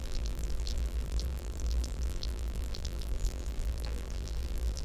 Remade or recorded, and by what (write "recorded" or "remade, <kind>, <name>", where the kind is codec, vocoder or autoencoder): remade, vocoder, BigVGAN v2